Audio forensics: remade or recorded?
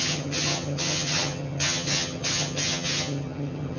remade